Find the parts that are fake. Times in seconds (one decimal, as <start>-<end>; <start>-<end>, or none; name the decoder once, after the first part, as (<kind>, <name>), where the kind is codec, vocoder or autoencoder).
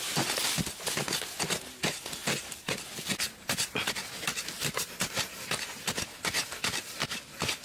none